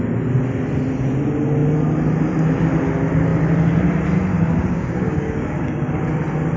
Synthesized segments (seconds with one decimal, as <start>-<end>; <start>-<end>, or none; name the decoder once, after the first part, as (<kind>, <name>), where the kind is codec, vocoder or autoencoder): 4.3-6.0 (codec, DAC)